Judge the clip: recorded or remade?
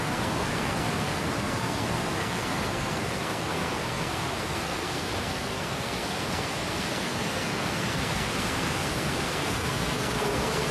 remade